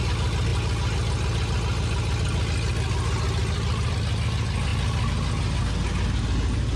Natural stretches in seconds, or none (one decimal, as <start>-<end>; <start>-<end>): 0.0-6.8